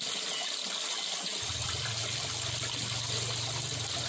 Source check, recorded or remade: recorded